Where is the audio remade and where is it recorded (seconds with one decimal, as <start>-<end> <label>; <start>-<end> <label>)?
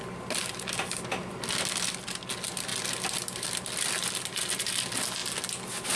0.0-6.0 recorded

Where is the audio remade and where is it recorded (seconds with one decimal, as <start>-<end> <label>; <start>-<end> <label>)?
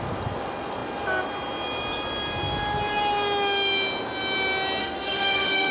0.0-4.8 recorded; 4.8-5.7 remade